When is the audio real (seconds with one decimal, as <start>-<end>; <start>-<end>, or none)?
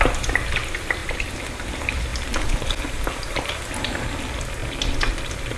0.0-1.0; 1.7-2.1; 3.6-4.6